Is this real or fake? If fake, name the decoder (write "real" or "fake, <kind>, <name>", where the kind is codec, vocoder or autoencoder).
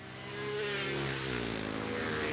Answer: real